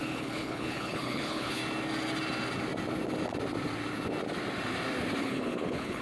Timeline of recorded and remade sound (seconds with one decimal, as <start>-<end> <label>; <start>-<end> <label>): 0.0-1.6 remade; 1.6-5.2 recorded; 5.2-6.0 remade

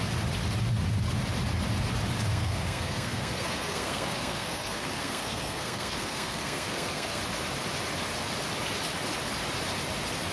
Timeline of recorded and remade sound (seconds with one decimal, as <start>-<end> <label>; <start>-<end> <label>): 0.0-2.3 recorded; 2.3-7.2 remade; 7.2-10.3 recorded

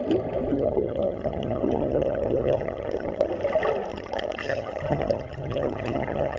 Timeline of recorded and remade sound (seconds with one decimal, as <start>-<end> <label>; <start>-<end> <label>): 0.0-0.5 recorded; 0.5-3.3 remade; 3.3-3.9 recorded; 3.9-6.4 remade

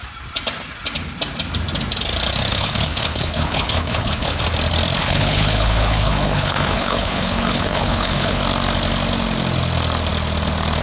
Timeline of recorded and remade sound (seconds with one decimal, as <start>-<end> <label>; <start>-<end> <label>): 0.0-2.5 recorded; 2.5-4.4 remade; 4.4-5.0 recorded; 5.0-8.4 remade; 8.4-10.8 recorded

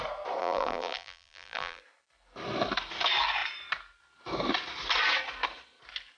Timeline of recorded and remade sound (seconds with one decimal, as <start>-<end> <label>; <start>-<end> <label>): 0.0-0.4 recorded; 0.4-1.8 remade; 1.8-6.2 recorded

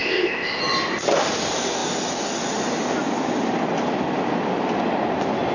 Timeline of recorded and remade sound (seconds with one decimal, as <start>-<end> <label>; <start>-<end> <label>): 0.0-0.6 remade; 0.6-5.5 recorded

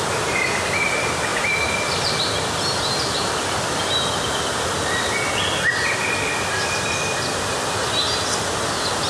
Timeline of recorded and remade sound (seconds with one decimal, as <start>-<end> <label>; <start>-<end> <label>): 0.0-9.1 recorded